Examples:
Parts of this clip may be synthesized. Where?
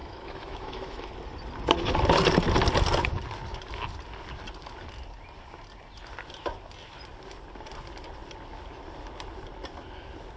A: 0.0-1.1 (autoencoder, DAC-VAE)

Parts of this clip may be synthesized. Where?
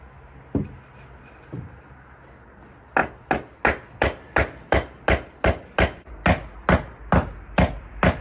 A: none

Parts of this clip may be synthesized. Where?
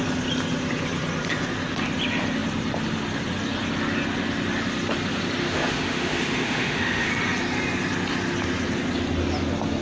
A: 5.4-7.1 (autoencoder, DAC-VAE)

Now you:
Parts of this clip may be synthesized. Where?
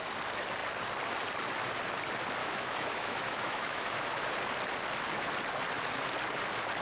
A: 2.4-4.3 (autoencoder, DAC-VAE)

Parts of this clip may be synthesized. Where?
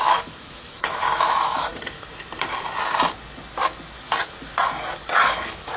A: 0.0-1.7 (autoencoder, DAC-VAE); 5.2-5.8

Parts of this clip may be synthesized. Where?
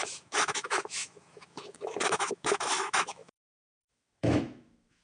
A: 0.0-5.0 (autoencoder, DAC-VAE)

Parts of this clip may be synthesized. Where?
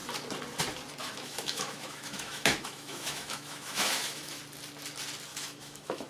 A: 1.0-4.4 (autoencoder, DAC-VAE); 5.3-6.1